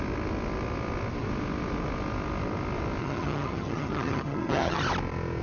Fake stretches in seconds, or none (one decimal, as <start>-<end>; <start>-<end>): 3.0-4.8